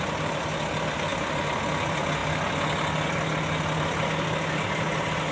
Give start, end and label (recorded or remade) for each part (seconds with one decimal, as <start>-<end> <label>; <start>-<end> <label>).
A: 0.0-5.3 recorded